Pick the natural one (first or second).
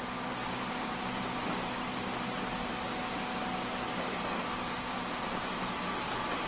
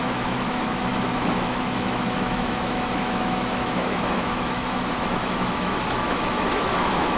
first